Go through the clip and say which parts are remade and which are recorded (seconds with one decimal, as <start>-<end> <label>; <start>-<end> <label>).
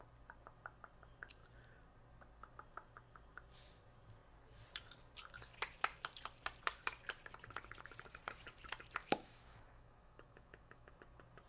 0.0-9.0 recorded; 9.0-10.9 remade; 10.9-11.5 recorded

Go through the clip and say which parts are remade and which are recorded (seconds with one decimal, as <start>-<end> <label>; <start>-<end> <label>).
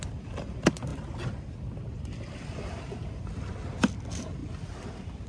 0.0-0.9 recorded; 0.9-2.3 remade; 2.3-3.0 recorded; 3.0-3.5 remade; 3.5-5.3 recorded